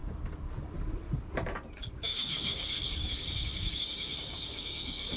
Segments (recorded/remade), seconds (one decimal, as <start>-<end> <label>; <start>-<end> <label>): 0.0-1.8 recorded; 1.8-5.2 remade